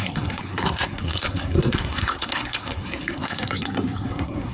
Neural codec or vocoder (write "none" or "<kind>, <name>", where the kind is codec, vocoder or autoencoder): codec, SNAC